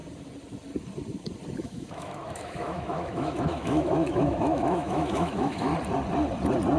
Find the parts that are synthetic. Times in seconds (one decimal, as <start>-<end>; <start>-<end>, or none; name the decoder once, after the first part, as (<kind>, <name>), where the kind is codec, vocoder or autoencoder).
1.6-5.7 (autoencoder, DAC-VAE)